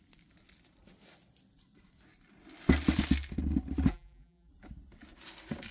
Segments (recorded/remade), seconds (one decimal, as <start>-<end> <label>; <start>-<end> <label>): 0.0-3.9 recorded; 3.9-4.5 remade; 4.5-5.7 recorded